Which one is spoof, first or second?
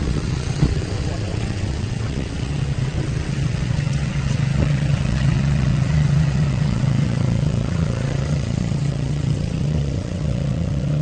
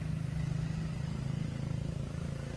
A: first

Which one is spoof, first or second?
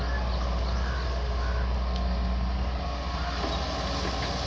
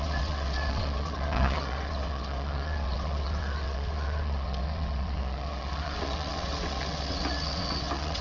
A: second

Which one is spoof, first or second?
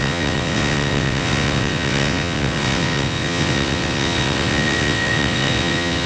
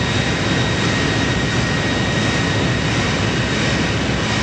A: first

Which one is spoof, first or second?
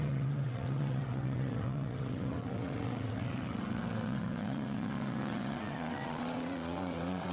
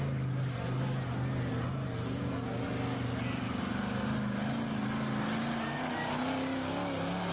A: first